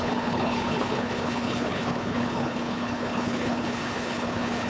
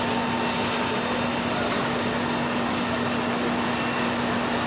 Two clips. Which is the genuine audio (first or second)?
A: second